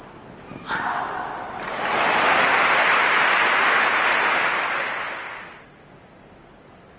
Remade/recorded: recorded